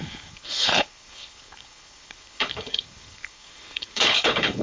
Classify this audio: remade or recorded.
remade